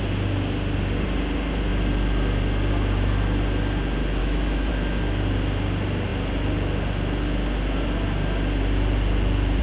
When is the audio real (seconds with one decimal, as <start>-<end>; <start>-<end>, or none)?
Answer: 0.0-4.2; 4.7-9.6